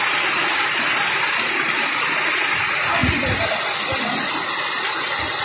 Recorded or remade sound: recorded